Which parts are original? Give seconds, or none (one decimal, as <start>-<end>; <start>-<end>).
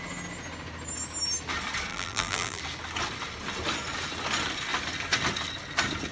0.0-1.9; 2.6-6.1